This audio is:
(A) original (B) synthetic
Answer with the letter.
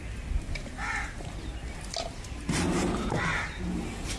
A